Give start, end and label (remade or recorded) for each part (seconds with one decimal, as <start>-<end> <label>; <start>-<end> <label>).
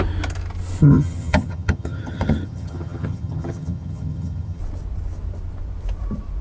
0.0-0.8 recorded; 0.8-4.6 remade; 4.6-6.4 recorded